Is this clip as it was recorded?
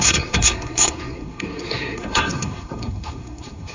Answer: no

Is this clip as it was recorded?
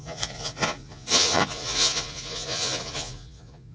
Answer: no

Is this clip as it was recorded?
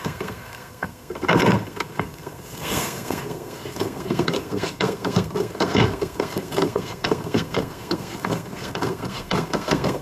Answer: no